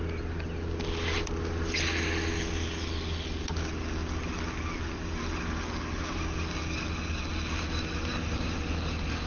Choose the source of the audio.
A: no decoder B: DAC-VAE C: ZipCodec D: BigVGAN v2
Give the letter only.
A